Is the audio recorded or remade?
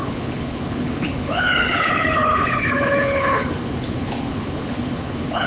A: remade